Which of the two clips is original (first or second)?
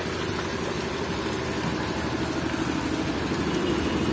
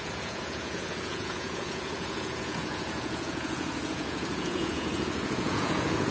first